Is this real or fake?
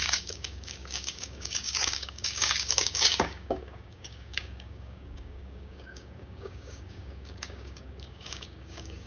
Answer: fake